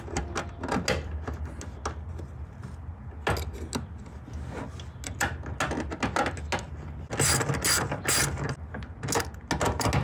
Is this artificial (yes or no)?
no